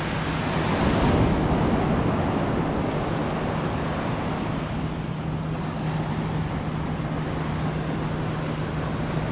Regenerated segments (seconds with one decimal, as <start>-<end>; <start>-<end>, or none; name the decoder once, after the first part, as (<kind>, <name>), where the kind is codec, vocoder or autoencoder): none